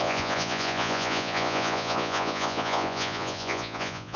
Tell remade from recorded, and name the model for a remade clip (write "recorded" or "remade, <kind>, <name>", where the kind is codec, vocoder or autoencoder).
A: remade, vocoder, Vocos